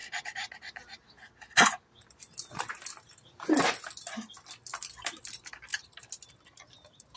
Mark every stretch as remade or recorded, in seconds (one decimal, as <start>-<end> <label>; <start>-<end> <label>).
0.0-7.2 recorded